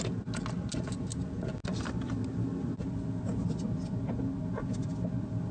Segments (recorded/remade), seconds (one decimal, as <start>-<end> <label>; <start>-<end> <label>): 0.0-5.5 recorded

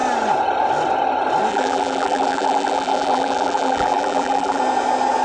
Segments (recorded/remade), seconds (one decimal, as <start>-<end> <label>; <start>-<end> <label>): 0.0-1.5 recorded; 1.5-4.6 remade; 4.6-5.2 recorded

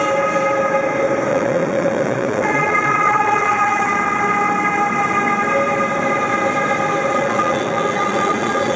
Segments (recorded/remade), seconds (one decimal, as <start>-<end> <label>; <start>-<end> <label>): 0.0-1.3 recorded; 1.3-3.9 remade; 3.9-7.1 recorded; 7.1-8.8 remade